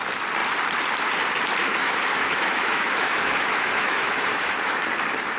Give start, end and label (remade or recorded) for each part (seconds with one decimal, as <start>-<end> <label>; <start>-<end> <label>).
0.0-1.6 recorded; 1.6-4.8 remade; 4.8-5.4 recorded

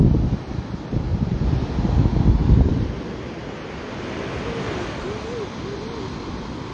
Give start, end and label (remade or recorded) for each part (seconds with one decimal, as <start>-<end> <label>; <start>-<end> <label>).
0.0-1.1 recorded; 1.1-1.7 remade; 1.7-2.4 recorded; 2.4-2.9 remade; 2.9-6.7 recorded

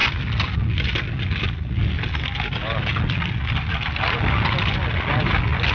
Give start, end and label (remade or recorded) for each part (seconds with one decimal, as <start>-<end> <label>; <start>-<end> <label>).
0.0-5.7 recorded

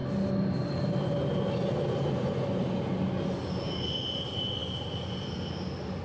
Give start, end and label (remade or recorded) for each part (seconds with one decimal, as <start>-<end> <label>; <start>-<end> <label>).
0.0-6.0 recorded

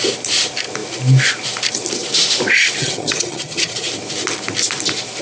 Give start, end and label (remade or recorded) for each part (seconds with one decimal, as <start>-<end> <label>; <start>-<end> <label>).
0.0-2.8 recorded; 2.8-3.9 remade; 3.9-5.2 recorded

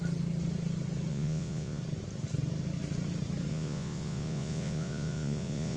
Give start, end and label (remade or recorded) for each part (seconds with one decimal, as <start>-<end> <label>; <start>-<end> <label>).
0.0-1.1 recorded; 1.1-1.8 remade; 1.8-3.5 recorded; 3.5-5.8 remade

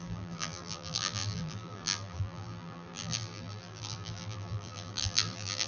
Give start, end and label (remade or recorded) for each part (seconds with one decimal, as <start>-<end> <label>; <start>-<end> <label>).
0.0-5.7 remade

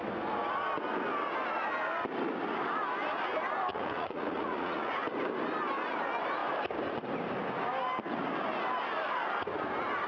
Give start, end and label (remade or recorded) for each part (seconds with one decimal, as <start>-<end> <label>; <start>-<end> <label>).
0.0-3.7 recorded; 3.7-4.9 remade; 4.9-10.1 recorded